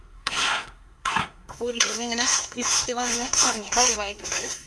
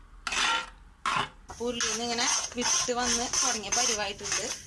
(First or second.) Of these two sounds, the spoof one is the first